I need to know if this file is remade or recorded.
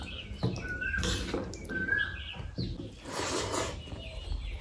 recorded